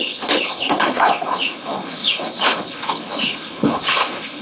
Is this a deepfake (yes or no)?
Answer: yes